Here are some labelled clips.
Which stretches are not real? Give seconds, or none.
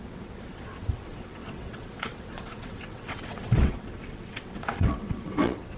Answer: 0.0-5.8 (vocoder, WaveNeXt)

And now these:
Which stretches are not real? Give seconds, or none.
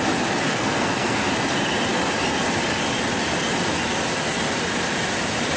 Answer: 0.5-1.3 (codec, SNAC)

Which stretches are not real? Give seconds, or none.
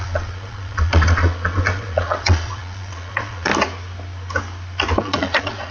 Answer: 0.0-3.5 (vocoder, Vocos); 5.0-5.7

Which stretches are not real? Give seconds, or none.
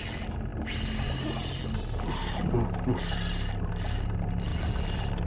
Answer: none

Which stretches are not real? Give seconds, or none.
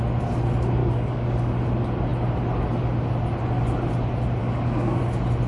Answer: 0.8-1.5 (codec, DAC); 4.4-5.0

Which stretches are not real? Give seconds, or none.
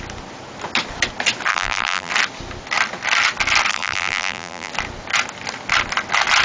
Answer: 1.5-2.1 (vocoder, BigVGAN v2); 3.7-4.7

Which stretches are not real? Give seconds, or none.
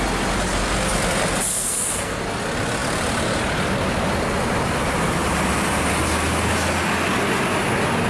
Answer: 1.5-2.2 (codec, SNAC)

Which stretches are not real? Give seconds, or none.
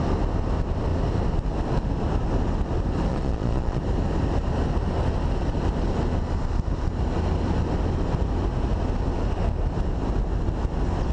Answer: 3.1-3.8 (vocoder, Vocos)